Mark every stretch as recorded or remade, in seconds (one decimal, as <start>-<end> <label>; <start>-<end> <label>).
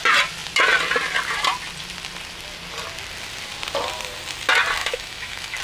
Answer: 0.0-4.8 recorded; 4.8-5.6 remade